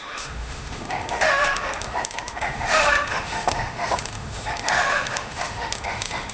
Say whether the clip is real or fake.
fake